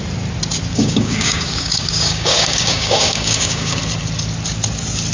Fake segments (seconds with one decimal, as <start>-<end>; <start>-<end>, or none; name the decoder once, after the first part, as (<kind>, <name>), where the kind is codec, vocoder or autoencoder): 0.7-3.8 (codec, DAC)